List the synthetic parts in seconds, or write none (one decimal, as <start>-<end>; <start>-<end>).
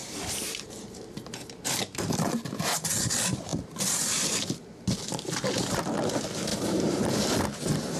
0.0-2.1; 6.5-7.0